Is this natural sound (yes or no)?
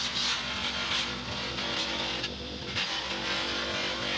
yes